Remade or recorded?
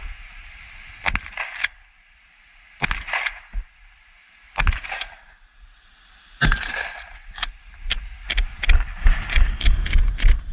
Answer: recorded